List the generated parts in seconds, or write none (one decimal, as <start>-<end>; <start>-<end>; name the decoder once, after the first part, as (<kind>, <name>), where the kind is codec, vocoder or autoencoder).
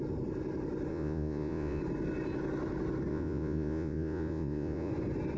0.9-1.8 (vocoder, Vocos); 3.1-4.9